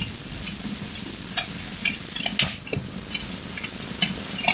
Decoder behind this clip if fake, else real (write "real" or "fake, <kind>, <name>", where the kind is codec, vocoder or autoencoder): real